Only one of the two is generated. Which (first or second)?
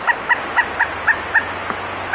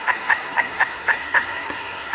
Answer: second